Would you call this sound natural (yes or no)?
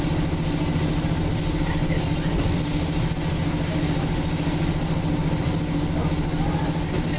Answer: yes